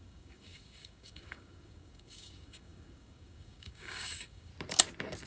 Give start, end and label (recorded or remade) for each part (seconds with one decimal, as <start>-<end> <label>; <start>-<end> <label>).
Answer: 0.0-4.5 remade; 4.5-5.3 recorded